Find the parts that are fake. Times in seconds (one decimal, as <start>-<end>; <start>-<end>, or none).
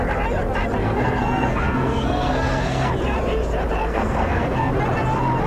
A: 0.8-2.9; 3.8-4.7